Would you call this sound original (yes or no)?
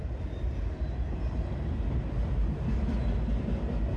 yes